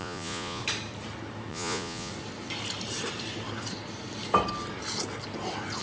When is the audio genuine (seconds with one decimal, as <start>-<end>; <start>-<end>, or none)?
0.6-1.5; 2.1-5.8